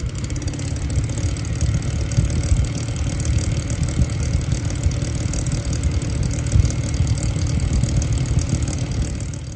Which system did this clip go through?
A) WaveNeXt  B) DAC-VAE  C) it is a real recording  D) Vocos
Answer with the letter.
C